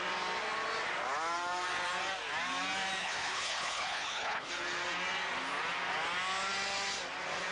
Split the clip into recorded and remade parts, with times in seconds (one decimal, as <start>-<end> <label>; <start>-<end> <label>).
0.0-3.0 recorded; 3.0-4.5 remade; 4.5-7.5 recorded